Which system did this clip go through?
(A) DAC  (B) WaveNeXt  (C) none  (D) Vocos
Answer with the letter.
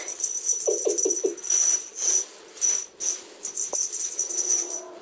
C